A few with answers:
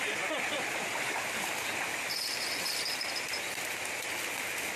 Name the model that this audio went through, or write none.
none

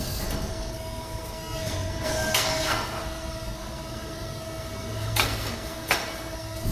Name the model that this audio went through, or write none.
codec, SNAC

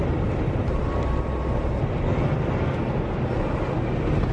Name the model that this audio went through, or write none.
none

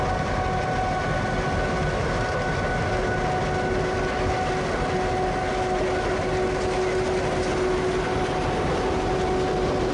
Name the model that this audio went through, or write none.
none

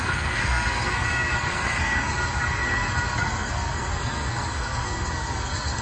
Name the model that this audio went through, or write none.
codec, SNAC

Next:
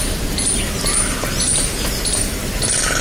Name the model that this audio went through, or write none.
none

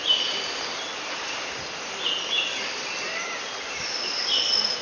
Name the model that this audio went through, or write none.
none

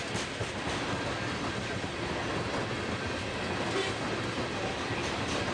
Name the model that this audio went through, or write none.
none